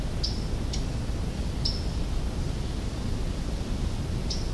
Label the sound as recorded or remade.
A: recorded